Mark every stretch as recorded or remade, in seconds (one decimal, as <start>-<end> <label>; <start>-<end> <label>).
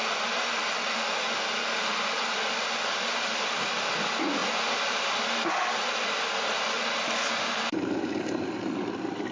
0.0-9.3 recorded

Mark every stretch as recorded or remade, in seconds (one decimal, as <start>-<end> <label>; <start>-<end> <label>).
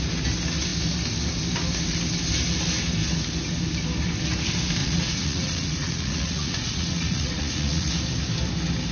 0.0-4.8 recorded; 4.8-7.9 remade; 7.9-8.9 recorded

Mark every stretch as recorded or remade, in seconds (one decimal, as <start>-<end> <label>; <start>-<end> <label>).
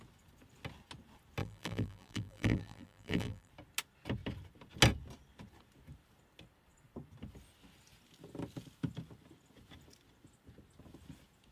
0.0-1.4 recorded; 1.4-3.5 remade; 3.5-11.5 recorded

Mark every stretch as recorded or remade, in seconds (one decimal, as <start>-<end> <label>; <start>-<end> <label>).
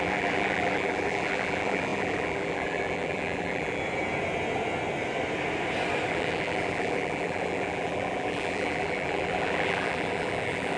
0.0-3.8 remade; 3.8-6.1 recorded; 6.1-10.8 remade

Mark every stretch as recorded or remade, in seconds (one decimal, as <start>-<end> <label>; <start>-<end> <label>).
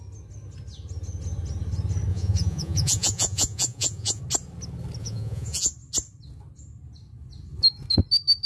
0.0-2.1 recorded; 2.1-4.2 remade; 4.2-5.0 recorded; 5.0-5.7 remade; 5.7-8.5 recorded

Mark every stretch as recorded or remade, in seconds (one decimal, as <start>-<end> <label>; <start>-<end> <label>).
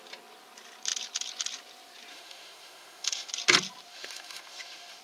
0.0-2.1 recorded; 2.1-3.3 remade; 3.3-3.9 recorded; 3.9-5.0 remade